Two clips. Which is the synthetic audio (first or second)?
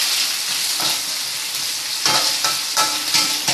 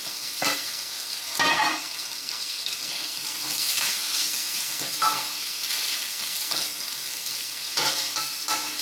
second